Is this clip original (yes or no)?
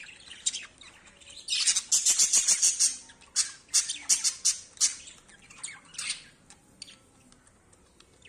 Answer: yes